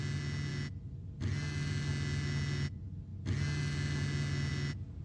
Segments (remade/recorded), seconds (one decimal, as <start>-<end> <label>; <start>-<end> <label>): 0.0-5.0 recorded